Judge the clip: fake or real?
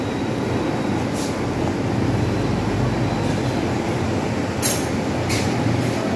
real